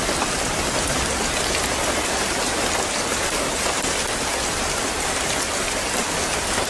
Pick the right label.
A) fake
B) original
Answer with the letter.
B